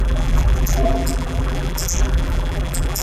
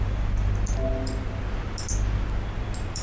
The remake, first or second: first